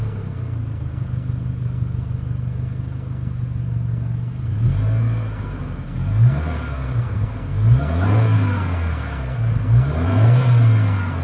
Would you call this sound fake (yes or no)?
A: yes